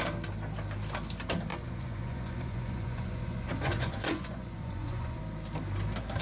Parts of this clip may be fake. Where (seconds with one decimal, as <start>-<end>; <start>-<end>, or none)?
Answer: 1.5-5.2